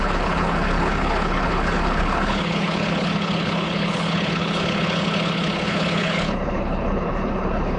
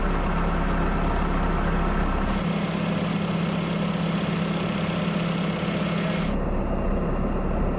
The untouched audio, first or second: second